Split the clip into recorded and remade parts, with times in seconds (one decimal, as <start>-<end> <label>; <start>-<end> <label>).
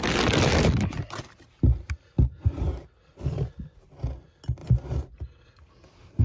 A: 0.0-6.2 recorded